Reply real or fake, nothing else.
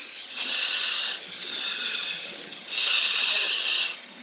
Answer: fake